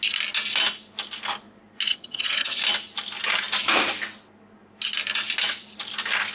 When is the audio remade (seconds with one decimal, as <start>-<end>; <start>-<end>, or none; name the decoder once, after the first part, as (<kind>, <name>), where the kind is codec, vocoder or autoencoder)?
1.9-2.6 (vocoder, HiFi-GAN)